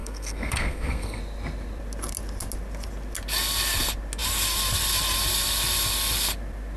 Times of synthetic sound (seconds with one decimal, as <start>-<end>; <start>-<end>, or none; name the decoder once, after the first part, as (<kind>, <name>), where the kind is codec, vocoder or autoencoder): 0.0-1.2 (codec, SNAC)